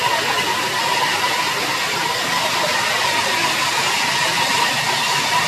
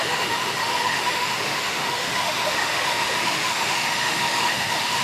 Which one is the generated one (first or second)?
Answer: second